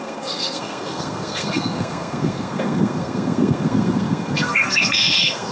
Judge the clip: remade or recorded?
remade